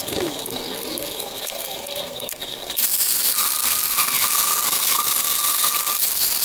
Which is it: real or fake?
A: fake